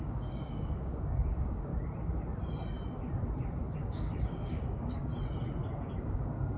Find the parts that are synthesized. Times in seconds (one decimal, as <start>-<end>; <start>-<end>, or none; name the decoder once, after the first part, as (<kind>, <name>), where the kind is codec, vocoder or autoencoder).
0.0-1.7 (codec, DAC); 3.6-5.1; 6.0-6.6